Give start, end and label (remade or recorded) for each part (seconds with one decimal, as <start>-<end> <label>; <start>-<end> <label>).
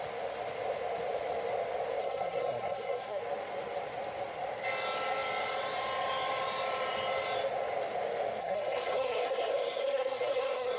0.0-2.0 recorded; 2.0-3.2 remade; 3.2-8.4 recorded; 8.4-10.8 remade